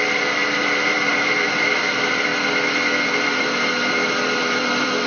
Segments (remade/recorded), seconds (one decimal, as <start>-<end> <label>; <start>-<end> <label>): 0.0-2.3 remade; 2.3-3.0 recorded; 3.0-5.1 remade

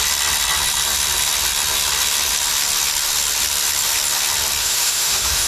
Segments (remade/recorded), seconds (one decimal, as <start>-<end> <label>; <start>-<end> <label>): 0.0-4.6 recorded; 4.6-5.5 remade

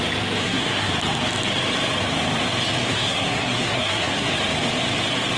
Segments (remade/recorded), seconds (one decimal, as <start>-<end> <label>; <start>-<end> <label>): 0.0-0.4 recorded; 0.4-0.9 remade; 0.9-2.9 recorded; 2.9-4.3 remade; 4.3-5.4 recorded

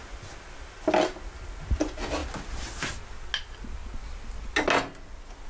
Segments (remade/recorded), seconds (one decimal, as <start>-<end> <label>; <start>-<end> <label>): 0.0-5.5 recorded

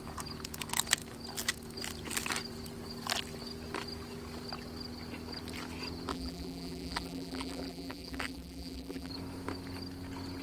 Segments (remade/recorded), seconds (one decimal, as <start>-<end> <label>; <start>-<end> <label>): 0.0-6.1 recorded; 6.1-9.1 remade; 9.1-10.4 recorded

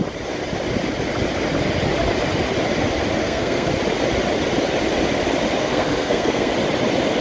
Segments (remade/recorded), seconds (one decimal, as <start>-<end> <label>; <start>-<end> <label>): 0.0-3.2 recorded; 3.2-3.7 remade; 3.7-5.6 recorded; 5.6-6.5 remade; 6.5-7.2 recorded